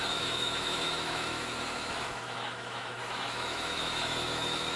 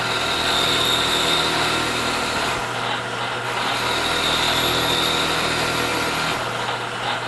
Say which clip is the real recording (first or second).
second